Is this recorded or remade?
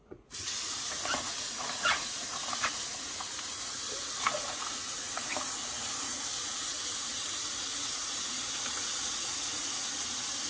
remade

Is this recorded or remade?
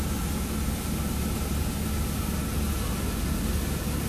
recorded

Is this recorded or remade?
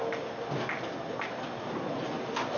recorded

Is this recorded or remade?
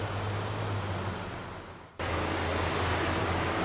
recorded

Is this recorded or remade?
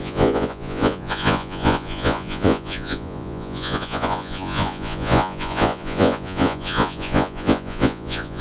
remade